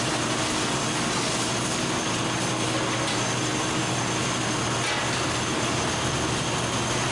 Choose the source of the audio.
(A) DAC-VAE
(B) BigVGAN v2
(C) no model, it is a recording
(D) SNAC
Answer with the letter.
C